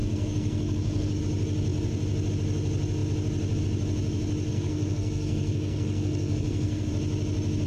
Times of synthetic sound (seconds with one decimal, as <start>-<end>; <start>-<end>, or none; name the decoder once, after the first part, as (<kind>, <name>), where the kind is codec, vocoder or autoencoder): 0.0-1.2 (codec, SNAC); 4.5-6.9